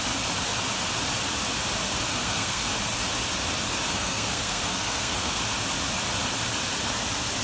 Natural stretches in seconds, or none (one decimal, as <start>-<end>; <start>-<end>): 0.0-2.1; 2.7-3.9; 5.4-7.4